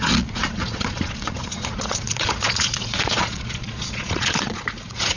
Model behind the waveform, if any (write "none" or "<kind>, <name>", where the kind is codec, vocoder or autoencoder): vocoder, Vocos